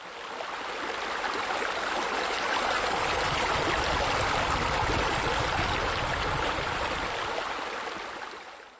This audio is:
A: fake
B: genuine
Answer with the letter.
B